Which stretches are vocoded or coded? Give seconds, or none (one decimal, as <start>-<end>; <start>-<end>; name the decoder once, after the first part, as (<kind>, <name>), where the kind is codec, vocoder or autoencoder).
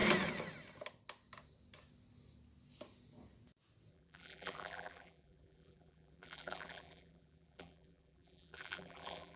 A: 3.9-9.4 (vocoder, BigVGAN v2)